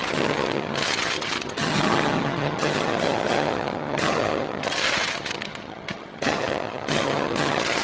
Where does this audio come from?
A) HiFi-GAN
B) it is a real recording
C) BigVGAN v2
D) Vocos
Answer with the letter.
A